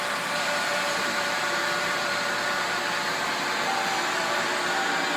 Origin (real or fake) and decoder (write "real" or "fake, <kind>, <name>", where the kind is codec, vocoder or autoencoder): fake, vocoder, BigVGAN v2